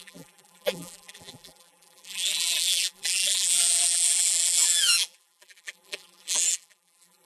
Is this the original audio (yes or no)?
no